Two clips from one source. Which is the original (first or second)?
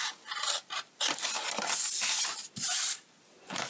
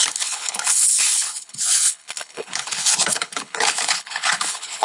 first